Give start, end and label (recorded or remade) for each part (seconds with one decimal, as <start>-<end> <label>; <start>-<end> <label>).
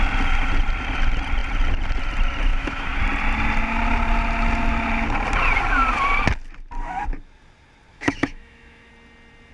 0.0-2.5 recorded; 2.5-3.0 remade; 3.0-7.9 recorded; 7.9-8.9 remade; 8.9-9.5 recorded